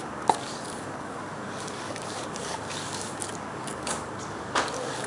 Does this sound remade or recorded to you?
remade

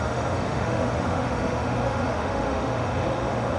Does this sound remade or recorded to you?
remade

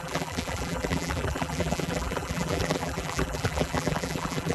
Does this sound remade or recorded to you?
remade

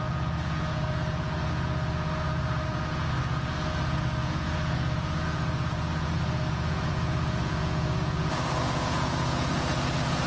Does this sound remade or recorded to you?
remade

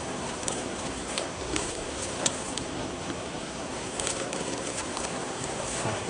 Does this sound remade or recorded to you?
remade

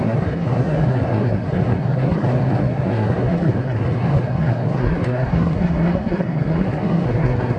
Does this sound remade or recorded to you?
remade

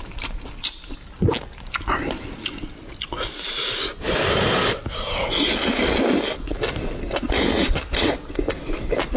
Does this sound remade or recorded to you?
recorded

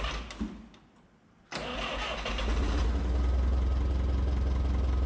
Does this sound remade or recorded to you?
recorded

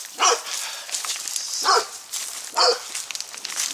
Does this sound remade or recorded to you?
recorded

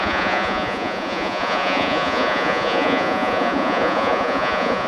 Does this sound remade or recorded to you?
remade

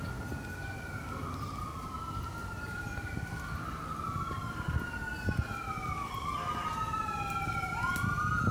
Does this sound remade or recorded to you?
recorded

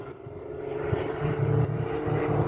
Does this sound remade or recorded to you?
remade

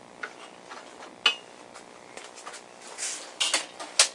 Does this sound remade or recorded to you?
recorded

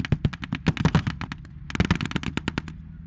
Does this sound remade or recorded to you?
recorded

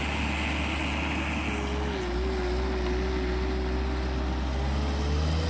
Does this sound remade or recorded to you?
recorded